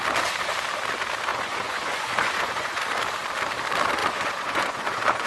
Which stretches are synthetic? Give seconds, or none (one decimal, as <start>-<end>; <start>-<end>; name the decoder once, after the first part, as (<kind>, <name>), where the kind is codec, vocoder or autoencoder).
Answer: 1.3-2.8 (vocoder, Vocos); 4.0-5.3